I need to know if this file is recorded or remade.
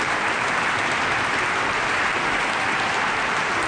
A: recorded